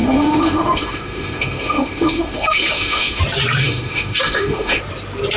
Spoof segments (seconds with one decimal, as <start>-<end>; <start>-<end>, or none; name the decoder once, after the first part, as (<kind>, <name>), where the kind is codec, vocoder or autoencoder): 0.0-3.2 (autoencoder, DAC-VAE); 3.6-4.8